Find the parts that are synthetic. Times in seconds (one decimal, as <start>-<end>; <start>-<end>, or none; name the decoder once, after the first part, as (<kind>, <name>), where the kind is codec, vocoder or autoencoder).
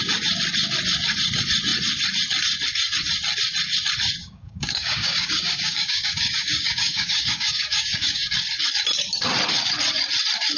4.2-8.3 (codec, DAC)